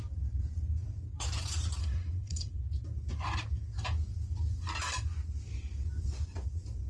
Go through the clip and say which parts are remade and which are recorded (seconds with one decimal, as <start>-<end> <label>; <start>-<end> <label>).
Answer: 0.0-1.8 recorded; 1.8-2.6 remade; 2.6-6.9 recorded